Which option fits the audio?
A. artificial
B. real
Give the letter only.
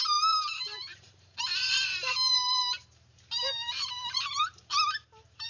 A